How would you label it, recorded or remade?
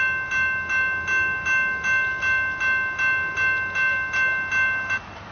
recorded